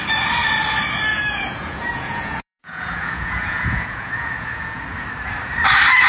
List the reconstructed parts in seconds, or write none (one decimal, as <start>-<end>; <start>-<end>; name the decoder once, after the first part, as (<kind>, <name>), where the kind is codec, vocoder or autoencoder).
1.1-4.8 (vocoder, Vocos)